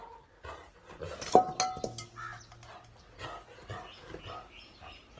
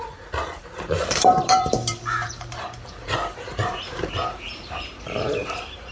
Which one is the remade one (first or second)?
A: second